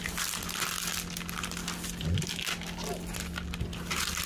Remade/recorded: recorded